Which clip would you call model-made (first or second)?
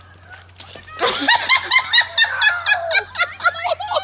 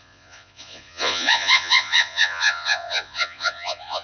second